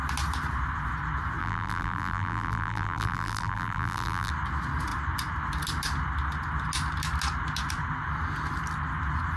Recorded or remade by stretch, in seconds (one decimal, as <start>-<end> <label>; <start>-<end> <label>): 0.0-1.4 recorded; 1.4-4.3 remade; 4.3-9.4 recorded